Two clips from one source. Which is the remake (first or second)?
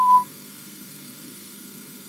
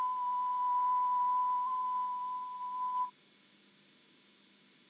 first